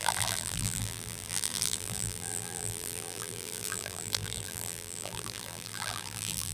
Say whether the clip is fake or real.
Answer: fake